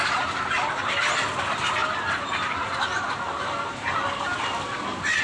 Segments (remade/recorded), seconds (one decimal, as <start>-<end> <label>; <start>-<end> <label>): 0.0-5.2 recorded